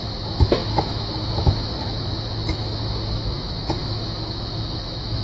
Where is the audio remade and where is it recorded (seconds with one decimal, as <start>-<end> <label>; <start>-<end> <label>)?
0.0-5.2 remade